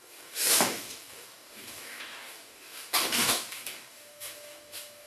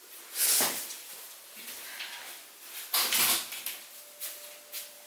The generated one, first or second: first